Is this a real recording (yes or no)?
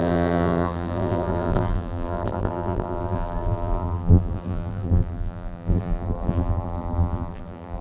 no